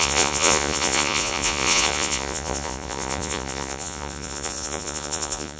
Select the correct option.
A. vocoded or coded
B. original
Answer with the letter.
A